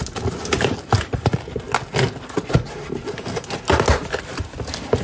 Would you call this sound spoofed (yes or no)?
no